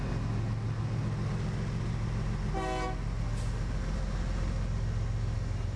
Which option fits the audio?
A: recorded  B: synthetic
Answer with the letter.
A